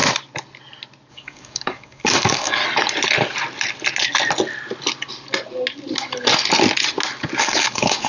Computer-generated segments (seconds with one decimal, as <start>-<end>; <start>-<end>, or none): 1.1-2.6; 7.4-8.1

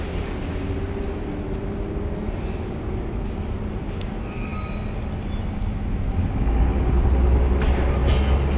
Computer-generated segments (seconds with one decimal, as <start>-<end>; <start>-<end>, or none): none

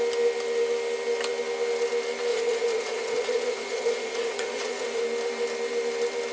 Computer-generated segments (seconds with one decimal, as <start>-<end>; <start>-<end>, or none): 2.3-5.0

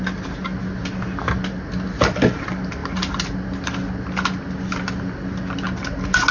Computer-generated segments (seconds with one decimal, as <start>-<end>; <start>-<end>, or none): none

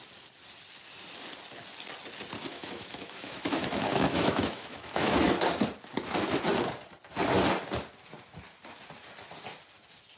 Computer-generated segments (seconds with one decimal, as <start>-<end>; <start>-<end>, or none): 2.5-5.3

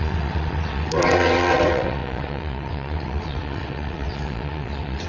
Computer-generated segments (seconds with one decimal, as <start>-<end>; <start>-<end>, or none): 0.0-5.1

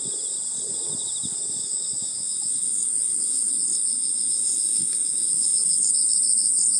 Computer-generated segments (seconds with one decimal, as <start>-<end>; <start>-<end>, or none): 1.6-3.5; 3.9-5.9

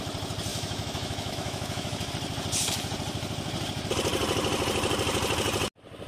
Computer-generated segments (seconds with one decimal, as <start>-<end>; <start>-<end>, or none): 0.5-2.1